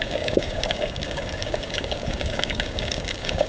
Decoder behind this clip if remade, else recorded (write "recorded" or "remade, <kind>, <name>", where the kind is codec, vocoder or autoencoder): remade, codec, DAC